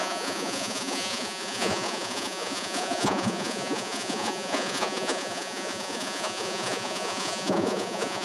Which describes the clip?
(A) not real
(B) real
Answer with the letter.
A